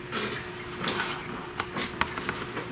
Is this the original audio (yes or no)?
yes